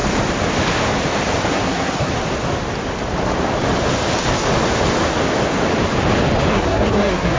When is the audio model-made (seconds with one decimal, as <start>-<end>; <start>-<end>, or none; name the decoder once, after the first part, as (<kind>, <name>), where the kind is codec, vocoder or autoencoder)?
1.5-2.1 (codec, SNAC); 6.5-7.4